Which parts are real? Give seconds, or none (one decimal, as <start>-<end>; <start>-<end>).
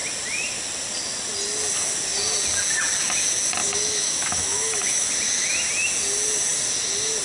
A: 0.0-3.6; 5.1-7.2